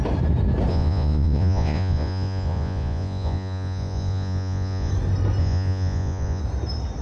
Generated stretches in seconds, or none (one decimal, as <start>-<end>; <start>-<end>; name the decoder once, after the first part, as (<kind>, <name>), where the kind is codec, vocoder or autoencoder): 0.7-4.9 (vocoder, Vocos); 5.4-6.4

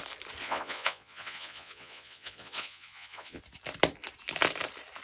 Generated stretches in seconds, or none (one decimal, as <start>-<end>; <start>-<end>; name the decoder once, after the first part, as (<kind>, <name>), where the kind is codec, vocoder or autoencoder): 0.4-3.4 (vocoder, Vocos)